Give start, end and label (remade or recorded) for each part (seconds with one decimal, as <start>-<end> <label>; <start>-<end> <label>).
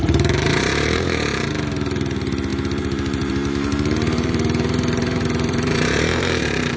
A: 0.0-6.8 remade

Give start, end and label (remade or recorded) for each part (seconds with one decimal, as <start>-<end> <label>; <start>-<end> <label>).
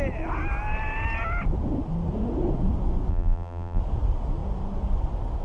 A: 0.0-3.1 recorded; 3.1-3.8 remade; 3.8-5.4 recorded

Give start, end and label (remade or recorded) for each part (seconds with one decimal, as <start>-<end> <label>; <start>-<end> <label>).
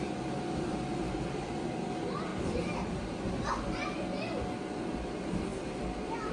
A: 0.0-0.7 recorded; 0.7-1.5 remade; 1.5-2.3 recorded; 2.3-3.0 remade; 3.0-6.3 recorded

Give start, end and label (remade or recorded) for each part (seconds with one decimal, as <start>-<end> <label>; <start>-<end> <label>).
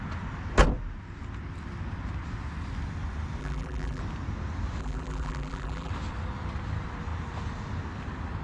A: 0.0-3.4 recorded; 3.4-4.0 remade; 4.0-4.8 recorded; 4.8-5.9 remade; 5.9-8.4 recorded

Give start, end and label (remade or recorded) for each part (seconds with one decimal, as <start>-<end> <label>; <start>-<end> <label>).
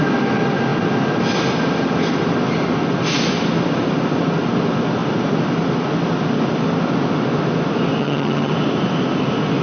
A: 0.0-8.0 recorded; 8.0-8.5 remade; 8.5-9.6 recorded